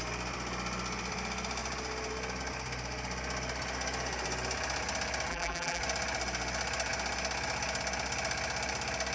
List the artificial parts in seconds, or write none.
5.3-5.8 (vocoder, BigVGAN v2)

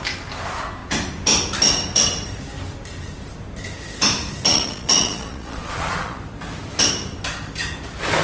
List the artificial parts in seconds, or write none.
4.4-6.2 (vocoder, Vocos)